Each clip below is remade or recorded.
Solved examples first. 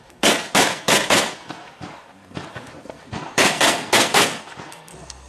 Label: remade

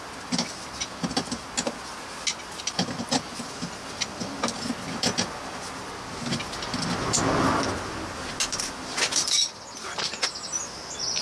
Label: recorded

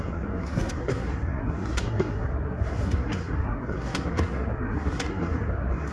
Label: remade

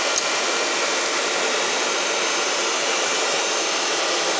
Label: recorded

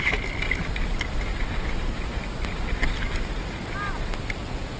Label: recorded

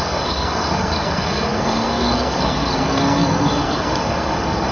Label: remade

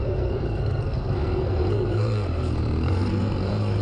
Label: remade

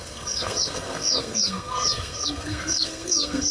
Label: remade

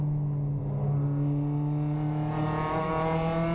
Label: recorded